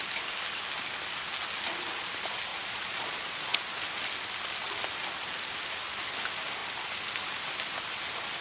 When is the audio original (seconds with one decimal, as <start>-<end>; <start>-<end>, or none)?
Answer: 0.0-2.5; 3.9-8.4